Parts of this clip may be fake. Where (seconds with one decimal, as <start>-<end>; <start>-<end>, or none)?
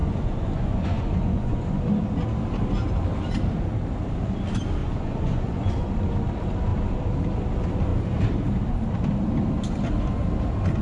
0.0-1.8; 4.8-5.7